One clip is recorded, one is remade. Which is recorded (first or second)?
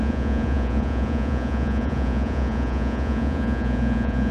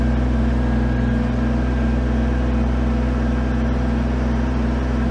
second